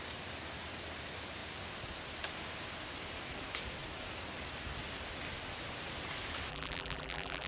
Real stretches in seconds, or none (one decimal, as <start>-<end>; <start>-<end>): 0.0-6.5